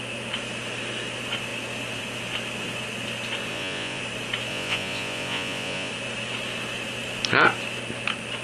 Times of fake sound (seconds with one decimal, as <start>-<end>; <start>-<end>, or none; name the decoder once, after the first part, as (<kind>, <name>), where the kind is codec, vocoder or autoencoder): 3.5-4.0 (vocoder, Vocos); 4.5-5.9